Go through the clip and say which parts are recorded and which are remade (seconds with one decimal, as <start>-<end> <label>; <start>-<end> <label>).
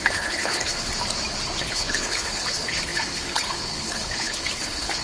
0.0-0.9 remade; 0.9-1.6 recorded; 1.6-5.0 remade